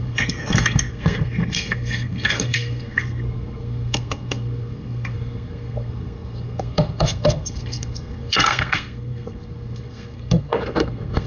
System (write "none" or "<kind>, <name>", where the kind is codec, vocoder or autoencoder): codec, SNAC